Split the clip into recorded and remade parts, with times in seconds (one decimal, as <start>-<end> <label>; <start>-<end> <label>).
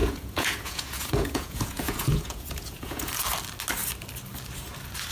0.0-3.1 remade; 3.1-5.1 recorded